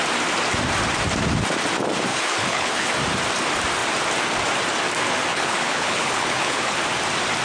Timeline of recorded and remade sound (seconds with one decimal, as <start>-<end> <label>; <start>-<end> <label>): 0.0-2.1 recorded; 2.1-2.9 remade; 2.9-5.3 recorded; 5.3-6.8 remade; 6.8-7.4 recorded